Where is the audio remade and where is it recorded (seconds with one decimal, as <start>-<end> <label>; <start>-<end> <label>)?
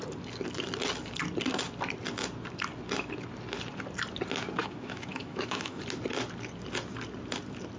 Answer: 0.0-4.6 recorded; 4.6-5.8 remade; 5.8-7.8 recorded